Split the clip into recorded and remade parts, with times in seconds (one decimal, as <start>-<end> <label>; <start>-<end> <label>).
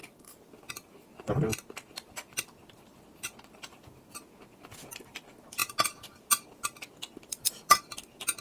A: 0.0-0.5 remade; 0.5-8.4 recorded